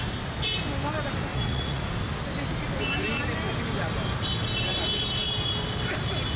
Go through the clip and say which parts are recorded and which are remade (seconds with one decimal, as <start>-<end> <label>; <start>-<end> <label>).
0.0-1.3 recorded; 1.3-1.8 remade; 1.8-6.4 recorded